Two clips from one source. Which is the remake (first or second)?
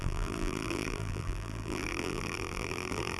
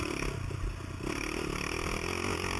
first